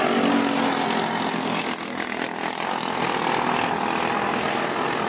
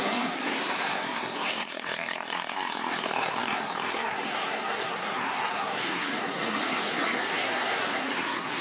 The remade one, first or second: second